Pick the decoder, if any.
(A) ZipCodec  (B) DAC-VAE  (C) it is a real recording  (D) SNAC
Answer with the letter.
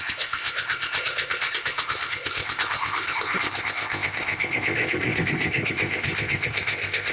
A